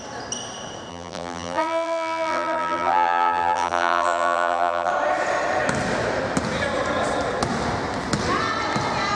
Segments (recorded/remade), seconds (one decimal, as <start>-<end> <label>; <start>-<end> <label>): 0.0-0.9 recorded; 0.9-4.9 remade; 4.9-9.1 recorded